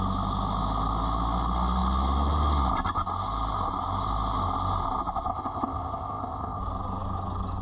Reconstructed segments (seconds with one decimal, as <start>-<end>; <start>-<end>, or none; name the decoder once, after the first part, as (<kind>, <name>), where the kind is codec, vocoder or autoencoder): 5.3-6.6 (codec, ZipCodec)